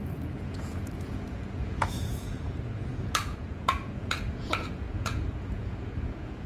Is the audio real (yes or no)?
no